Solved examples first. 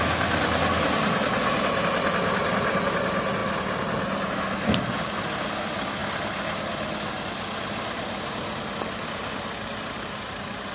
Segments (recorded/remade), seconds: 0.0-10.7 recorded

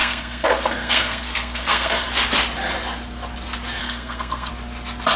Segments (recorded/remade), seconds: 0.0-2.1 remade; 2.1-3.8 recorded; 3.8-4.5 remade; 4.5-5.2 recorded